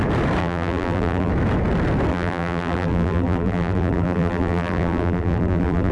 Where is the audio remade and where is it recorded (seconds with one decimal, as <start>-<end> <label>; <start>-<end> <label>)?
0.0-0.4 recorded; 0.4-1.3 remade; 1.3-2.1 recorded; 2.1-5.9 remade